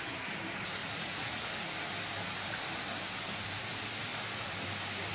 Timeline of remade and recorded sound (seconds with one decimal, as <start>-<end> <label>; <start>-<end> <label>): 0.0-0.8 recorded; 0.8-1.7 remade; 1.7-5.1 recorded